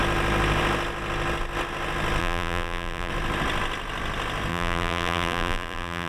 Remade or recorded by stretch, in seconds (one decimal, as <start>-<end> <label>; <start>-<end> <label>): 0.0-2.2 recorded; 2.2-3.1 remade; 3.1-4.5 recorded; 4.5-6.1 remade